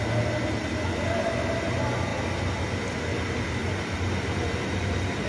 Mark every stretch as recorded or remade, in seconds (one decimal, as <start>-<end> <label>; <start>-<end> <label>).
0.0-3.6 recorded; 3.6-4.1 remade; 4.1-5.3 recorded